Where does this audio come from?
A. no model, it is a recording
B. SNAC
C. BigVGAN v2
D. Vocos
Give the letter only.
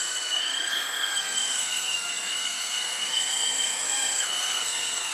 B